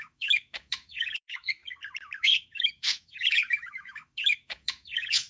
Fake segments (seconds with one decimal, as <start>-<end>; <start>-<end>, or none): 0.0-1.6; 2.2-5.3